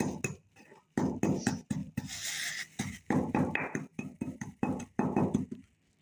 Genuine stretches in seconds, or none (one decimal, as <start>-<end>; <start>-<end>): 0.0-1.8; 2.5-3.9; 5.3-6.0